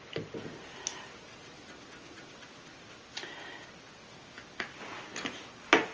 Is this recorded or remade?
recorded